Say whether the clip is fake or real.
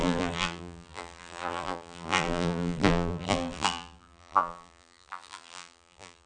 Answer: fake